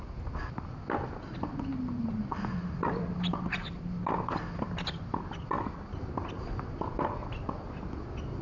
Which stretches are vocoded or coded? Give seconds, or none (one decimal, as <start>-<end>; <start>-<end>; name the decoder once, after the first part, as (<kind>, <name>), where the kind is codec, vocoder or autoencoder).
none